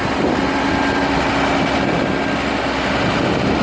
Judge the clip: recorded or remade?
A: recorded